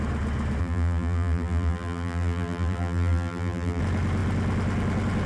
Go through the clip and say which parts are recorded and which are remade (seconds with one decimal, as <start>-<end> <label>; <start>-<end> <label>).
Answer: 0.0-0.6 recorded; 0.6-3.8 remade; 3.8-5.3 recorded